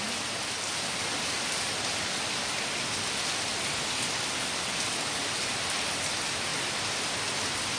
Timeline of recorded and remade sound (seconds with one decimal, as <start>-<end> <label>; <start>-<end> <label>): 0.0-7.8 recorded